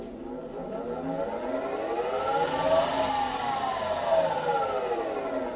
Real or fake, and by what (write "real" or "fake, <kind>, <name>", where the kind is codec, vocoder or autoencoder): real